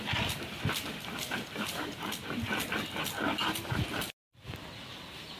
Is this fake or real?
real